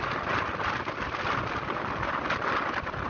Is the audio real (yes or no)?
yes